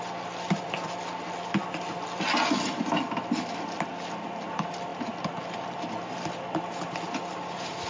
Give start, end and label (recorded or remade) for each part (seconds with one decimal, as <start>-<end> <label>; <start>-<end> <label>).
0.0-7.9 recorded